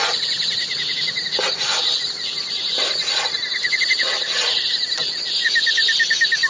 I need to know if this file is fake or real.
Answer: real